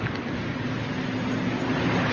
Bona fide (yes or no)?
yes